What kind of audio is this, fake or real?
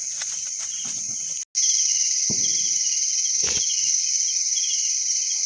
real